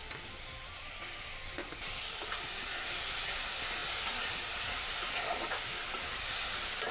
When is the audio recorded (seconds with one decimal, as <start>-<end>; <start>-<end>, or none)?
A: 3.3-3.8